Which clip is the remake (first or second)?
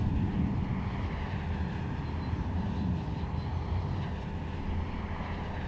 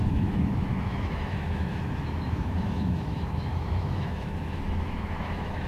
second